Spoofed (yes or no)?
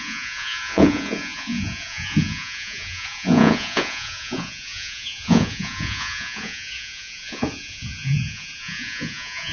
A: yes